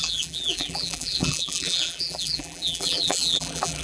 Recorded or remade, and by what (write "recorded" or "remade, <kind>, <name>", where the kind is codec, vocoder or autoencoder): remade, vocoder, BigVGAN v2